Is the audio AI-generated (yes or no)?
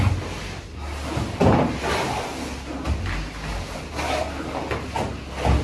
no